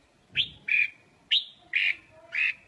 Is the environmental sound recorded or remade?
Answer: recorded